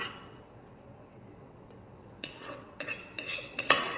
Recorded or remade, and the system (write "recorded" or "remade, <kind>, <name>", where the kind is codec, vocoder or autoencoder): remade, vocoder, WaveNeXt